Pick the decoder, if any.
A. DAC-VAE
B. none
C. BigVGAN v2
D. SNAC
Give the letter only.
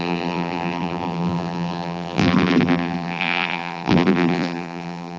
C